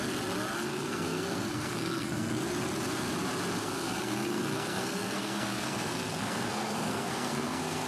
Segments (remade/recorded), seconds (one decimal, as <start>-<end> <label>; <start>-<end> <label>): 0.0-0.7 recorded; 0.7-2.5 remade; 2.5-3.6 recorded; 3.6-7.9 remade